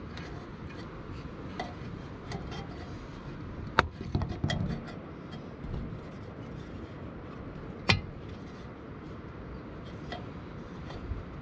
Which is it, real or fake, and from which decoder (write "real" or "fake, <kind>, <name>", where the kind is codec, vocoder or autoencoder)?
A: real